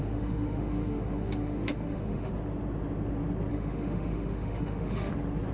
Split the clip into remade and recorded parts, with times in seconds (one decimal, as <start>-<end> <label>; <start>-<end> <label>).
0.0-2.3 remade; 2.3-3.5 recorded; 3.5-5.1 remade; 5.1-5.5 recorded